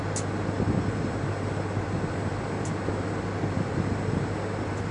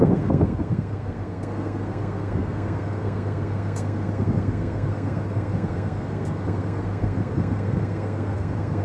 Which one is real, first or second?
first